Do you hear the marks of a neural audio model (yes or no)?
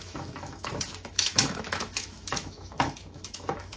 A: yes